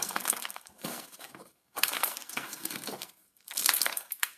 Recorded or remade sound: remade